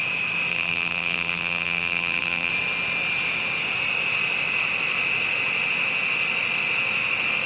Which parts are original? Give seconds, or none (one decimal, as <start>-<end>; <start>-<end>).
0.0-0.5; 2.5-7.5